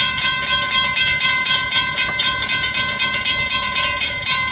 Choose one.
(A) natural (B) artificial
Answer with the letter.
B